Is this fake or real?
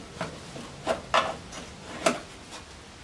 real